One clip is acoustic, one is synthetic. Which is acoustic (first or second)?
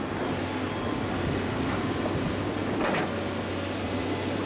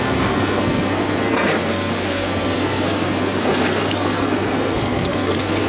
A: first